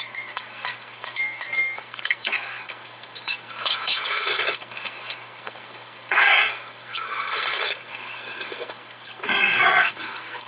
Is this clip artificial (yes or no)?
yes